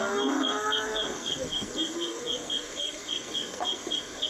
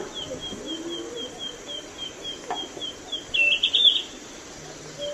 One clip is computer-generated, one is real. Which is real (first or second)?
second